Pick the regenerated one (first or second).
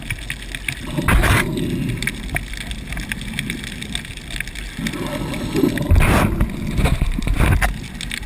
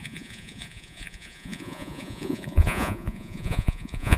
second